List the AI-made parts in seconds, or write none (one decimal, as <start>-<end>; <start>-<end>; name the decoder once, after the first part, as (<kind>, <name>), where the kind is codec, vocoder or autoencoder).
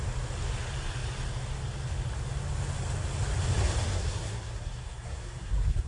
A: 3.9-5.9 (codec, SNAC)